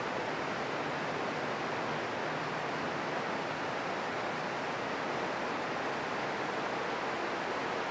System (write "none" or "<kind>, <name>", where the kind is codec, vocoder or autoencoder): none